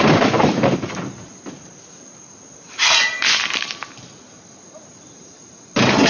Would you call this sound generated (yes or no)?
yes